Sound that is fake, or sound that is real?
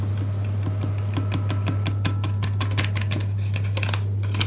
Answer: real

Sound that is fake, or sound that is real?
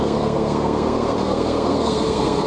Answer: fake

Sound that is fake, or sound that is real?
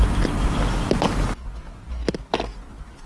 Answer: real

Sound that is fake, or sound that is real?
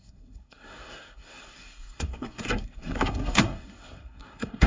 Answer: fake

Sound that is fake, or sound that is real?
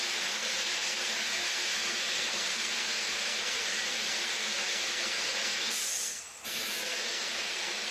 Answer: fake